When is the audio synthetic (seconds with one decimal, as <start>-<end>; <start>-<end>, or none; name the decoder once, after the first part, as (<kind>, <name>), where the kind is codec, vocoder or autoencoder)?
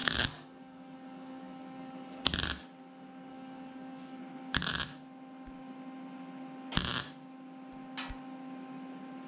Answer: 0.0-2.2 (codec, DAC); 3.3-4.2